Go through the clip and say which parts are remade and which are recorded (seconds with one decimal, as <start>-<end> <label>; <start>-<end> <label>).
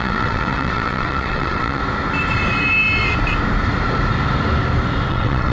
0.0-1.8 remade; 1.8-5.1 recorded; 5.1-5.5 remade